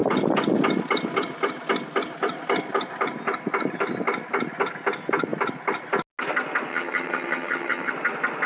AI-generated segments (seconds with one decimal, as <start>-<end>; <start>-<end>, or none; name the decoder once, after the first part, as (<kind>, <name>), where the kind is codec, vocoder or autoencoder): 6.7-7.9 (vocoder, HiFi-GAN)